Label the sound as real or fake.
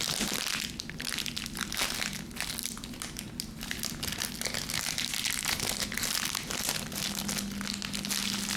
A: real